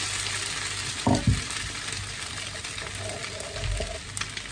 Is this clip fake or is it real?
real